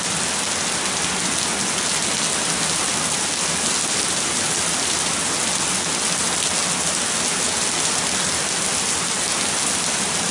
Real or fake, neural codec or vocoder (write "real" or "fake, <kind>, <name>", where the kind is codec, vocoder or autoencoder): real